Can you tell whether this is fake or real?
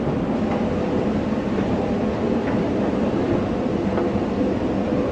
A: real